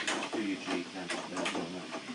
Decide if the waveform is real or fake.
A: real